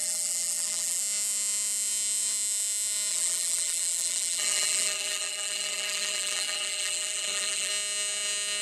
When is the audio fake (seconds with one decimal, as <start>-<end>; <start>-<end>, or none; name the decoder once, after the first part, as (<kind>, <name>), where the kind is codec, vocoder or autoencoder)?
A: 0.0-1.0 (vocoder, BigVGAN v2); 3.1-7.7